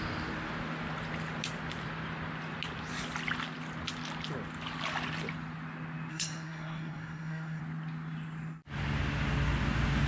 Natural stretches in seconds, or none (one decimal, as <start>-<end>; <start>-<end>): 0.0-6.1; 7.6-10.1